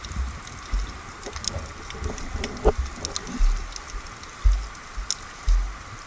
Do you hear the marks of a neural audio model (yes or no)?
no